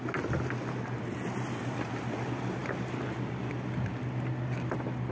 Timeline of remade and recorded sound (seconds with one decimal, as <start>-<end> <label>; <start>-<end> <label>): 0.0-5.1 recorded